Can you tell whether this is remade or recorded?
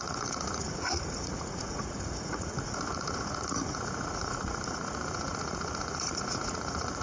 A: remade